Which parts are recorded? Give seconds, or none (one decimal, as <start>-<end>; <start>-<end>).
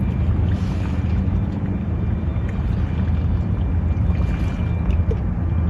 0.0-5.7